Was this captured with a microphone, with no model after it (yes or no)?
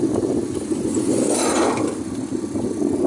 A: yes